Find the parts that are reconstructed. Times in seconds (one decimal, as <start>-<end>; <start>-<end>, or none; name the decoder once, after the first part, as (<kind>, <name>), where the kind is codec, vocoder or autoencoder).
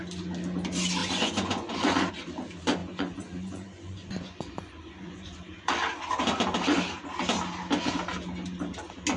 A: 1.0-2.1 (vocoder, Vocos); 2.8-5.7